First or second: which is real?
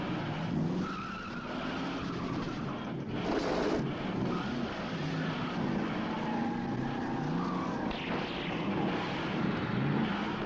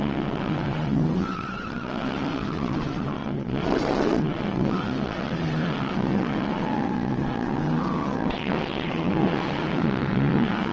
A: first